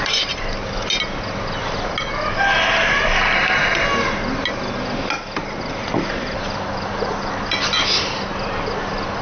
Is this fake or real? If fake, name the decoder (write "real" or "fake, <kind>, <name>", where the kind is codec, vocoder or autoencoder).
real